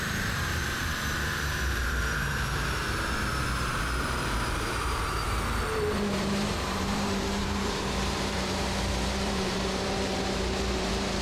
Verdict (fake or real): fake